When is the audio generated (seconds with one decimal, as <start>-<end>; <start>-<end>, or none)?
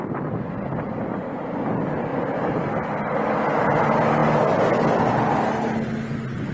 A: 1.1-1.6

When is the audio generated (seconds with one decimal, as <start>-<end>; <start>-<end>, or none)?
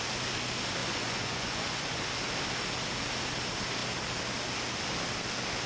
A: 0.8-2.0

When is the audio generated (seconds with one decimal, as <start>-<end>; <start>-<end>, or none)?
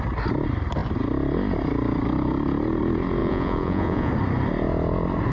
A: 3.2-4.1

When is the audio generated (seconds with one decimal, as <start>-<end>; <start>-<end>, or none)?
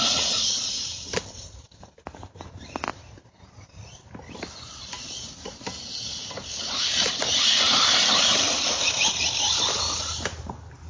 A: 0.0-0.7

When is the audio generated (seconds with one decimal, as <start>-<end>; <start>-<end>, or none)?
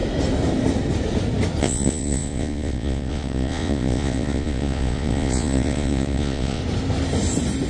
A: 1.6-6.6